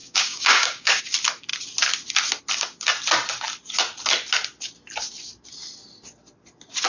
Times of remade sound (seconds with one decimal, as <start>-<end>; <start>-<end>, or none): 0.0-1.0